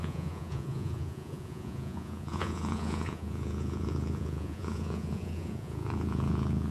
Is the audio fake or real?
fake